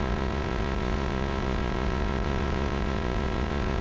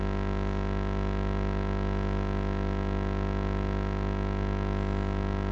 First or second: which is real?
second